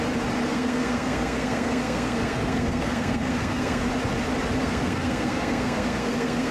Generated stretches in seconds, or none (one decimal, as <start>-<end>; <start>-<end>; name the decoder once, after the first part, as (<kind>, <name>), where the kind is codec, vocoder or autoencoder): 0.5-3.9 (codec, SNAC); 4.6-6.5

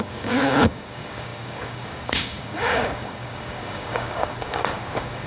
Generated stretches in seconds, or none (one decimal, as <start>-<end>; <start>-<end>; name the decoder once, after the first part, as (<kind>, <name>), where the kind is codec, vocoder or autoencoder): 0.0-5.3 (codec, DAC)

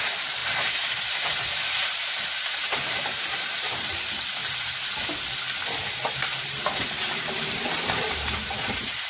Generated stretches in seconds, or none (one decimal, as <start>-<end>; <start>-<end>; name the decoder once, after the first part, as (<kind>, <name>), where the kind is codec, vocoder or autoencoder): 0.0-4.4 (vocoder, BigVGAN v2); 6.1-9.1